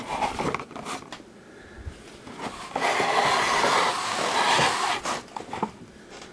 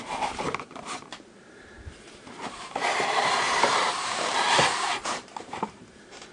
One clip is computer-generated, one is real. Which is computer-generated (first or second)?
second